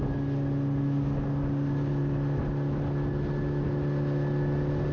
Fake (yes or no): no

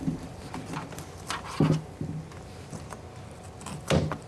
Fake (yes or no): no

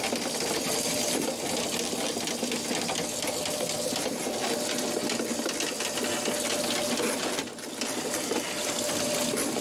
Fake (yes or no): no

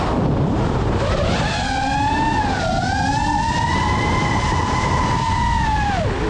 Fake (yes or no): no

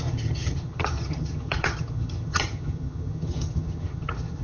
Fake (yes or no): yes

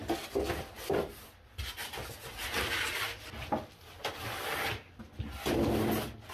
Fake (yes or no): no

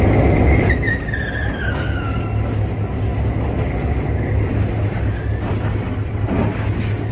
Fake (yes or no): no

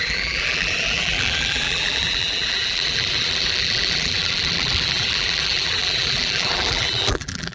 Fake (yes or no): yes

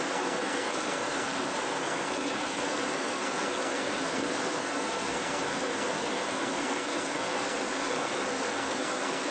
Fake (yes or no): yes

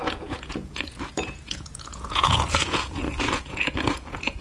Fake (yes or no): yes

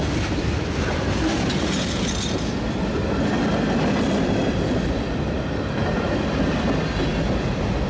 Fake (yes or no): no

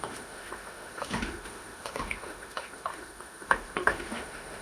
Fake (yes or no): yes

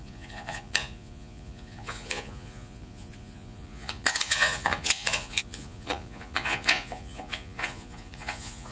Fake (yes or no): yes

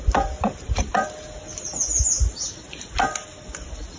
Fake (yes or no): no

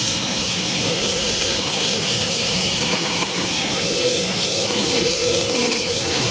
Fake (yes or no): yes